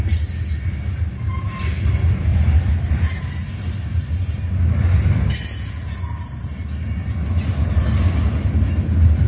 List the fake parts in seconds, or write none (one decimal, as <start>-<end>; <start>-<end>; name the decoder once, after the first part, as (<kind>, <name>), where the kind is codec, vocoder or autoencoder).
none